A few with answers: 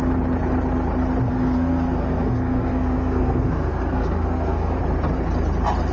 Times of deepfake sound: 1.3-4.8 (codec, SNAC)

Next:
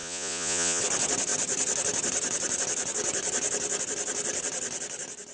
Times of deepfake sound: 0.0-0.8 (vocoder, Vocos)

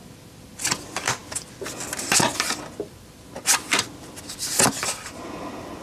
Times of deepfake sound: none